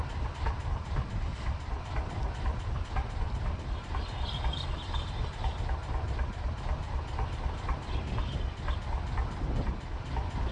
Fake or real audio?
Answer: real